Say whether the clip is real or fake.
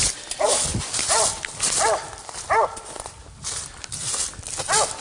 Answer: real